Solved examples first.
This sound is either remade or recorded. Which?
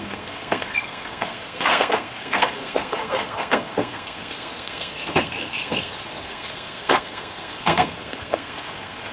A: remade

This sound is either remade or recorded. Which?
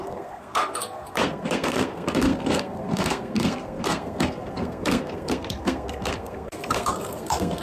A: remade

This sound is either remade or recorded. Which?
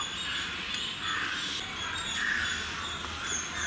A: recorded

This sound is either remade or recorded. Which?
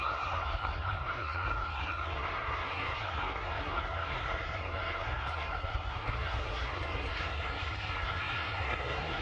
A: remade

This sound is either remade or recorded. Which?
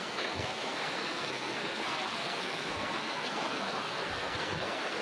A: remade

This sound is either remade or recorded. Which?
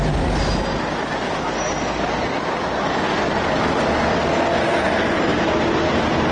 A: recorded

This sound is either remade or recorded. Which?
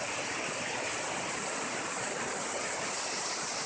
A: recorded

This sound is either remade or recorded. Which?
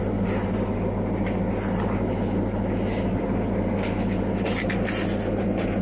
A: recorded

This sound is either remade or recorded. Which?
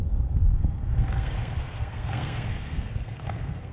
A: remade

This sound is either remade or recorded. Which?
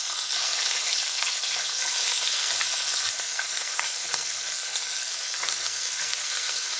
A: remade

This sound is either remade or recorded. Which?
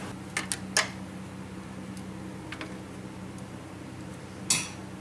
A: recorded